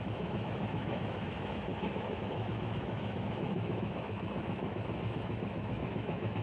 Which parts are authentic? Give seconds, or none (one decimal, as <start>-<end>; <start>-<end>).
none